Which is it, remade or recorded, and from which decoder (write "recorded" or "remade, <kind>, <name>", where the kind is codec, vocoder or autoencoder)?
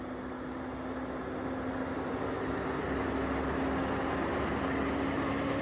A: recorded